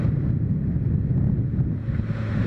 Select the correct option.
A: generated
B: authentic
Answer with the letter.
B